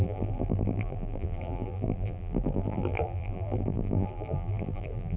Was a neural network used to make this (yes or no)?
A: yes